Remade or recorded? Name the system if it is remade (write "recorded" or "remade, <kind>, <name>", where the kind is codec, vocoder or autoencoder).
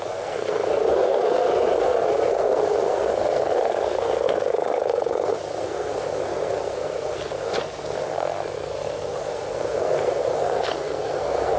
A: remade, codec, SNAC